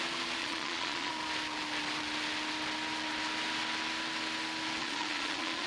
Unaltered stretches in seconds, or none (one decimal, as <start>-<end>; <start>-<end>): 0.0-0.4; 1.1-4.8